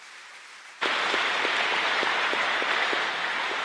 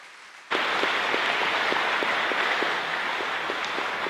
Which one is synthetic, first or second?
first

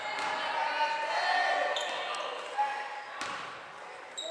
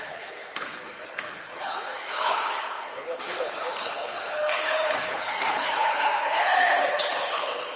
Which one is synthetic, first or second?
second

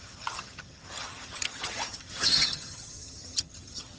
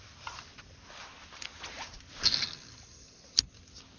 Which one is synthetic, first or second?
first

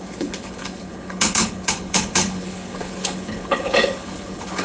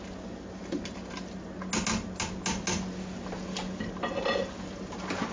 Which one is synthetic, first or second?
first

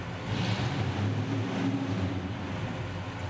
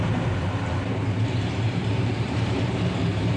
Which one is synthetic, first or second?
second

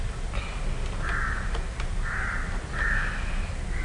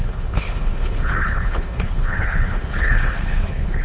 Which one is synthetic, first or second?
second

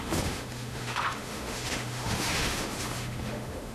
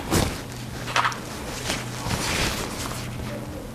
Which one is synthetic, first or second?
first